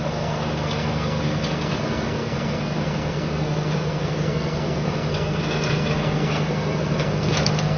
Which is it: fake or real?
fake